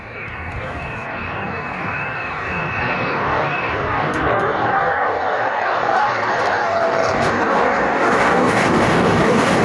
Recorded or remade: remade